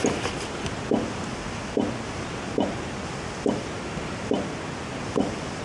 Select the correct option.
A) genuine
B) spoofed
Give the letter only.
A